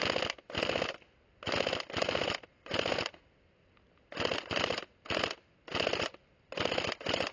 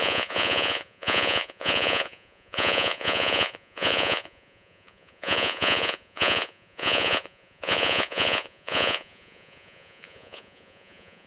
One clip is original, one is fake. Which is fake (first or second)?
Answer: second